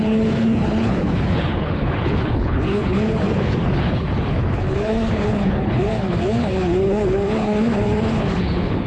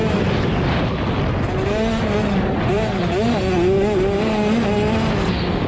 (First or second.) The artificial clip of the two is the first